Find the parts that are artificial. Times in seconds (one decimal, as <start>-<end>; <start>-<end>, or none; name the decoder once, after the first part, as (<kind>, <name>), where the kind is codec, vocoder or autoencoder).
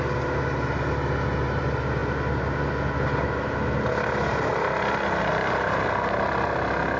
none